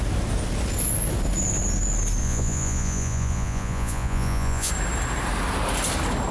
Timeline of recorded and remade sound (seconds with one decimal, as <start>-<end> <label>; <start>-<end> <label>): 0.0-2.2 recorded; 2.2-4.7 remade; 4.7-6.3 recorded